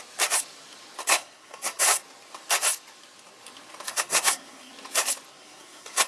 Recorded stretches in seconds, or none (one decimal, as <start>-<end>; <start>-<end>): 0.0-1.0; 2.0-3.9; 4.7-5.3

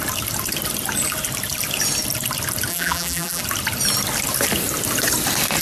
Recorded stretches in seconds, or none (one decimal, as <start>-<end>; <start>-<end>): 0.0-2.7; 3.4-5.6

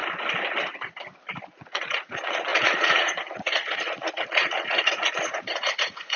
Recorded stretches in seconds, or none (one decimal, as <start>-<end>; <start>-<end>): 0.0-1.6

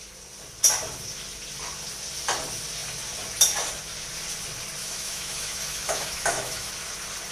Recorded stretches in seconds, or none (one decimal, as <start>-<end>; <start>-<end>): 0.0-4.8; 6.7-7.3